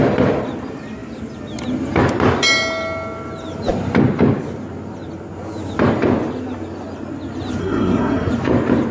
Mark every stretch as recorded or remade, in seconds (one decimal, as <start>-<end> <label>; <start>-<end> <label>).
0.0-7.6 recorded; 7.6-8.3 remade; 8.3-8.9 recorded